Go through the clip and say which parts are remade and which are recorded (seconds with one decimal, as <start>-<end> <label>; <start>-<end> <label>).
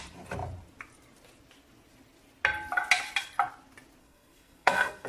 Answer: 0.0-4.0 recorded; 4.0-5.1 remade